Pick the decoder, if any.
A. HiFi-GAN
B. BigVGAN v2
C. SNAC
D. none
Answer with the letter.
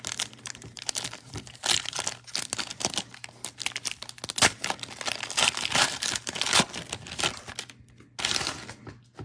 D